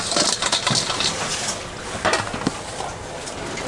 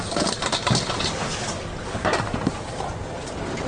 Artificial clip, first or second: second